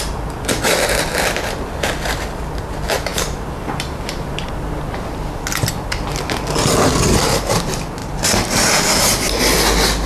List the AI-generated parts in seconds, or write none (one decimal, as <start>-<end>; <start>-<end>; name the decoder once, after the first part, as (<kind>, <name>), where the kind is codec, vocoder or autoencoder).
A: none